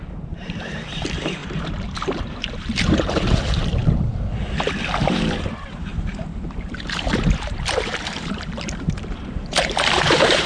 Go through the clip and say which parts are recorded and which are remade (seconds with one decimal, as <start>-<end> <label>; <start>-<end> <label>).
0.0-3.8 remade; 3.8-5.0 recorded; 5.0-10.5 remade